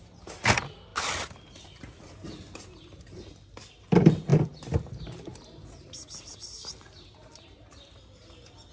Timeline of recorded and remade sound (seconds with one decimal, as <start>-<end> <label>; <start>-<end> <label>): 0.0-8.7 recorded